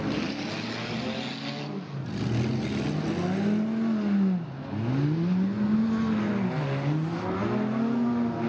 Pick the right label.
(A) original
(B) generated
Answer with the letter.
A